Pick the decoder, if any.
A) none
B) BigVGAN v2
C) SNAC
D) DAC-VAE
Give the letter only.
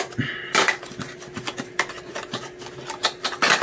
A